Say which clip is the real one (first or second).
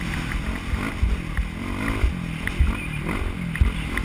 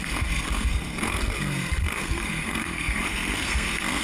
first